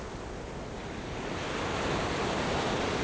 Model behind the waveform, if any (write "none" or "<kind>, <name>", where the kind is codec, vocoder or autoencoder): none